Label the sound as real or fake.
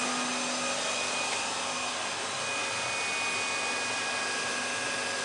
real